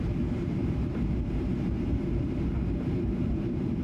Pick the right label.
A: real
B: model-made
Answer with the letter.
B